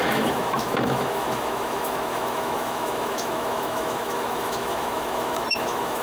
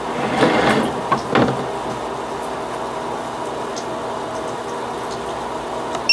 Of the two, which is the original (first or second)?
second